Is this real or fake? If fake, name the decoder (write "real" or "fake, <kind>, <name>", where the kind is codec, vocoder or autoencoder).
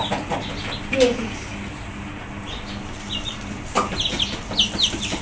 real